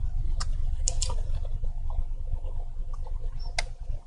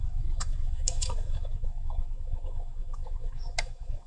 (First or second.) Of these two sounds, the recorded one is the first